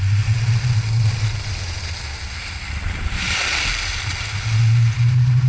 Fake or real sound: real